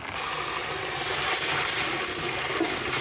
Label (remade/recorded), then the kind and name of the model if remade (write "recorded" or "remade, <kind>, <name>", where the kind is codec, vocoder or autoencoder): recorded